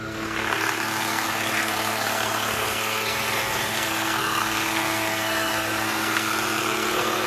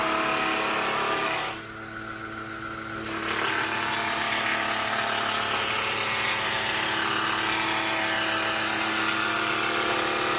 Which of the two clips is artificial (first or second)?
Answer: first